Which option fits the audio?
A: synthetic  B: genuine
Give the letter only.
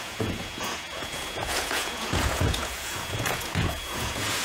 A